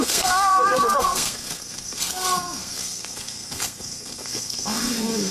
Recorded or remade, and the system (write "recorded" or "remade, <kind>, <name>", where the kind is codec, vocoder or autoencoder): remade, codec, SNAC